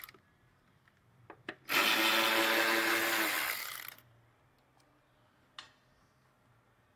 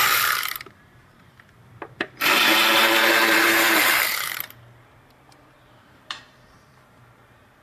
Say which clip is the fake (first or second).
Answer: second